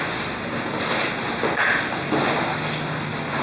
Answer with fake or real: real